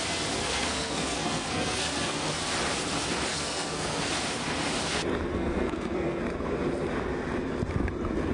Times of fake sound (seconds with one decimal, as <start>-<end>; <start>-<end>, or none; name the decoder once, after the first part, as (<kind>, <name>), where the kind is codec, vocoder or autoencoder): 0.4-2.4 (codec, SNAC); 3.3-4.1; 5.3-6.2